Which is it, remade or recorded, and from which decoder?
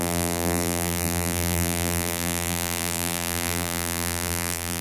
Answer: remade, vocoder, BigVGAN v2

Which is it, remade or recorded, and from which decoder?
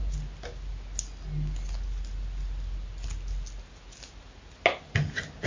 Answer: recorded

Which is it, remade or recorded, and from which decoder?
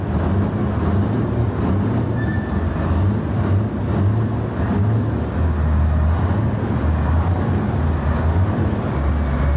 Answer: recorded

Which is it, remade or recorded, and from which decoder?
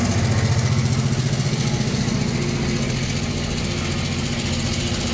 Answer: recorded